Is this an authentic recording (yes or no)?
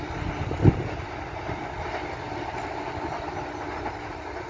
yes